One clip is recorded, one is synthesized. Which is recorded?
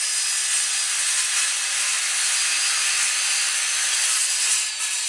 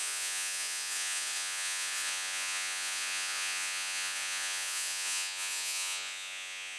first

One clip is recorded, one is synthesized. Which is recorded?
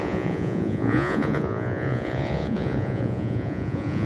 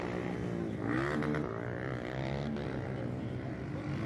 second